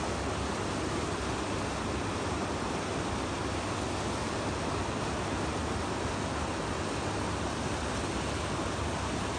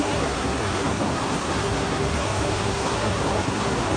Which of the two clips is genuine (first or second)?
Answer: first